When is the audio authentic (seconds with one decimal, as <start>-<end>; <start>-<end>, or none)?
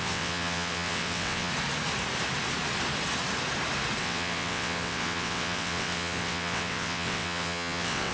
1.5-4.0